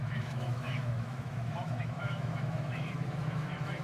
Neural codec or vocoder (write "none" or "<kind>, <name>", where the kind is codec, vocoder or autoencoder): autoencoder, DAC-VAE